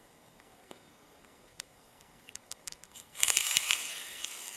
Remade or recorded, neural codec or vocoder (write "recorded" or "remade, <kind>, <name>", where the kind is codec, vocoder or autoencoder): remade, codec, SNAC